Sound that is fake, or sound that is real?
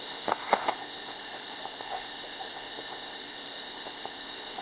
fake